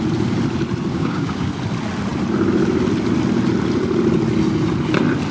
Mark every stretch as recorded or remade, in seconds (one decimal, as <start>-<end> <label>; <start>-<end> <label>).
0.0-0.9 recorded; 0.9-1.5 remade; 1.5-5.3 recorded